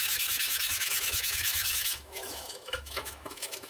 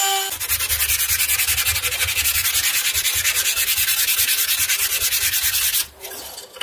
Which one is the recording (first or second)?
second